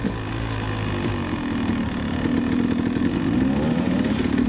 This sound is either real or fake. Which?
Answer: real